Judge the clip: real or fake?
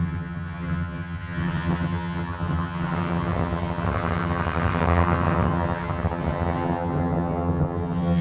fake